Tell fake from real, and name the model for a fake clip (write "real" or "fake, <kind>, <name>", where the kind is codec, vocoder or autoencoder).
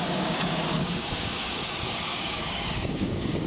fake, codec, DAC